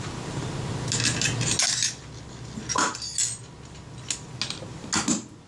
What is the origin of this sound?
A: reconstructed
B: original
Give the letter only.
B